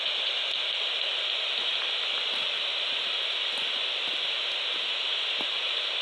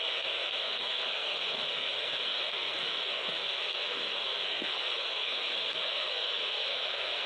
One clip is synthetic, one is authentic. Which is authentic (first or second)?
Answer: first